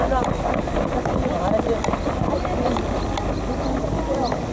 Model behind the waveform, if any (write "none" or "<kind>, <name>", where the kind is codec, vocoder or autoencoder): none